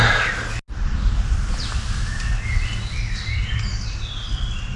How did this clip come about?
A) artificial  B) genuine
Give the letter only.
B